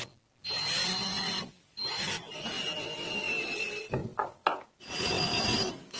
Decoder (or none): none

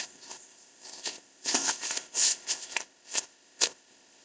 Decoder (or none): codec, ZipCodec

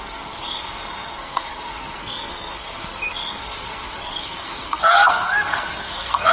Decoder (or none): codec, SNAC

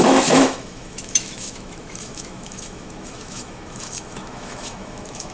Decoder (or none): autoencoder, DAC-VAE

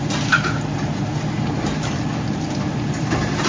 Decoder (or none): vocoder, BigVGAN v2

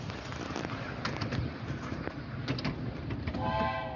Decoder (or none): none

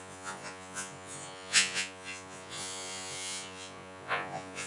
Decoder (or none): vocoder, Vocos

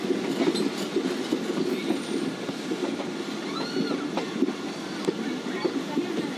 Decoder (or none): none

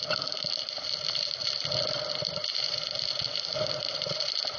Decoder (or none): none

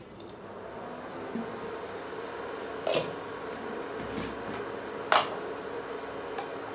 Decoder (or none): none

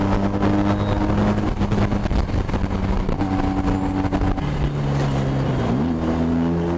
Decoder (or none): none